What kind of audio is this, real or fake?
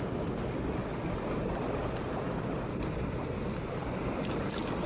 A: real